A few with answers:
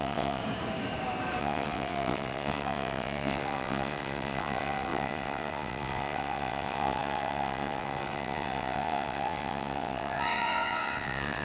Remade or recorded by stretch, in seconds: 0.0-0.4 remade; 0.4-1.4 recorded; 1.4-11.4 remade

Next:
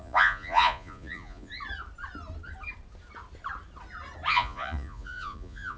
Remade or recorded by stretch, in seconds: 0.0-1.5 remade; 1.5-4.3 recorded; 4.3-5.8 remade

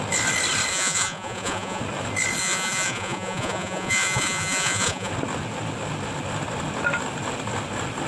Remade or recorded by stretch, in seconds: 0.0-0.7 recorded; 0.7-1.8 remade; 1.8-2.4 recorded; 2.4-5.1 remade; 5.1-8.1 recorded

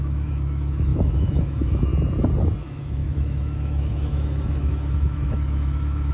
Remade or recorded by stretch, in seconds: 0.0-1.9 remade; 1.9-2.6 recorded; 2.6-6.1 remade

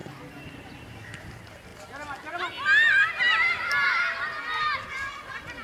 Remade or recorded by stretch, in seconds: 0.0-1.2 remade; 1.2-5.6 recorded

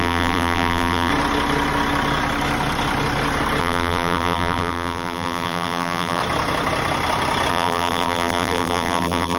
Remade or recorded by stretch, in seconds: 0.0-1.1 remade; 1.1-3.6 recorded; 3.6-6.2 remade; 6.2-7.5 recorded; 7.5-9.4 remade

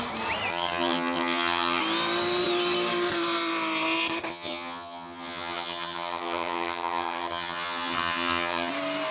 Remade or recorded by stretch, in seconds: 0.0-0.5 recorded; 0.5-1.8 remade; 1.8-4.3 recorded; 4.3-8.7 remade; 8.7-9.1 recorded